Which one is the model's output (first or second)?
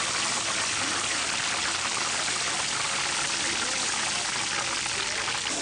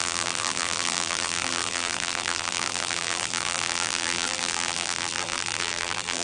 second